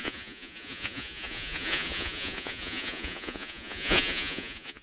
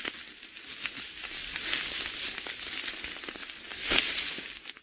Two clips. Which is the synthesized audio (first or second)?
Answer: first